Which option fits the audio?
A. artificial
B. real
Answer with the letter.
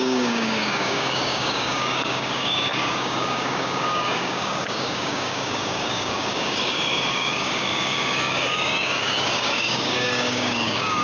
A